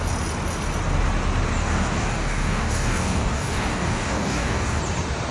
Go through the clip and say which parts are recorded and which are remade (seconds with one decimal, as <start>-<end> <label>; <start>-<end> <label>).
0.0-1.6 recorded; 1.6-4.8 remade; 4.8-5.3 recorded